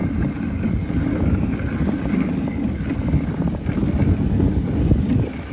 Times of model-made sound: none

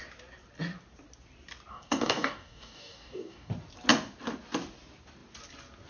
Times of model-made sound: 1.7-3.5 (codec, DAC)

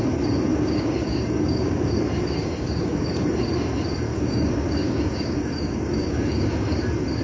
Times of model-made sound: 0.5-1.9 (codec, DAC); 2.4-3.1; 4.1-6.8

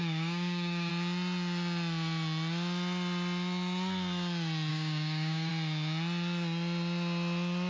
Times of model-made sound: 0.0-0.9 (codec, DAC); 4.7-5.5

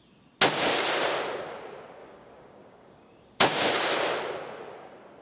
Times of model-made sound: 2.0-3.7 (codec, DAC)

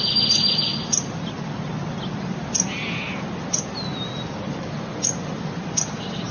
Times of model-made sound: none

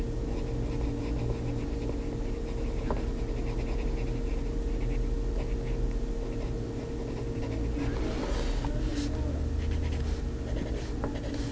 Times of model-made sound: none